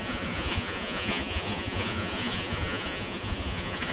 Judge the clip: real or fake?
fake